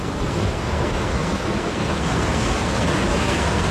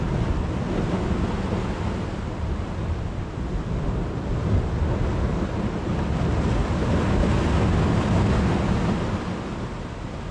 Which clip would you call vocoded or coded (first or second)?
first